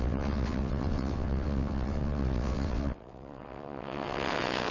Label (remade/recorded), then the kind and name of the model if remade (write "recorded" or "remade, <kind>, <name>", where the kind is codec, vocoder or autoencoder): remade, vocoder, WaveNeXt